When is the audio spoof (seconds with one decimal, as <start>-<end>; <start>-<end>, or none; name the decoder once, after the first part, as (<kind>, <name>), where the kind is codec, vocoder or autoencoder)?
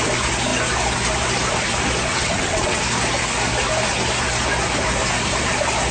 2.1-2.8 (vocoder, WaveNeXt)